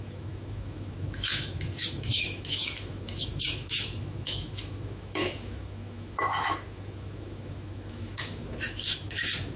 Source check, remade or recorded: remade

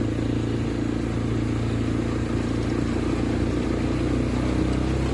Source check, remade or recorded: recorded